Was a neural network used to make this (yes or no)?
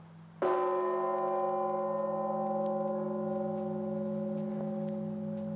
no